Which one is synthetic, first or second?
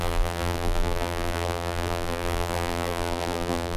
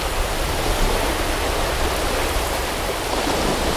first